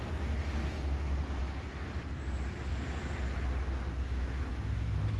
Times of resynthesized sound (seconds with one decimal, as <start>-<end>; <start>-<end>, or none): none